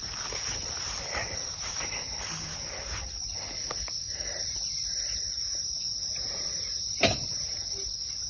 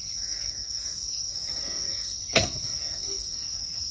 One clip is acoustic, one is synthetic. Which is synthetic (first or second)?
second